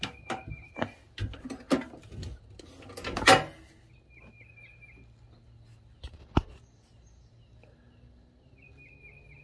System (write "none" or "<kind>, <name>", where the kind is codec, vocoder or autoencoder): none